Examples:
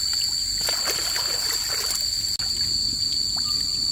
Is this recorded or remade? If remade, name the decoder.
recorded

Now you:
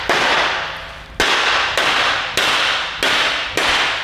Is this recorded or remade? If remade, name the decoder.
recorded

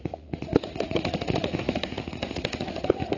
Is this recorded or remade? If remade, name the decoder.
remade, vocoder, Vocos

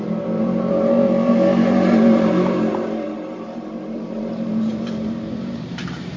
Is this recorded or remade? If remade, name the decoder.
remade, vocoder, BigVGAN v2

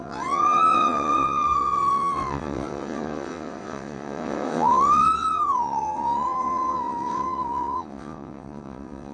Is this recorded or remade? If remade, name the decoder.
remade, vocoder, WaveNeXt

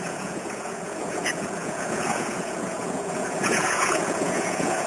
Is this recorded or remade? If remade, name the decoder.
remade, vocoder, Vocos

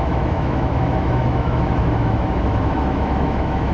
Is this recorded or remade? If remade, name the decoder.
remade, autoencoder, DAC-VAE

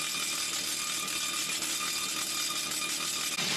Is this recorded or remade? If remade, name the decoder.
recorded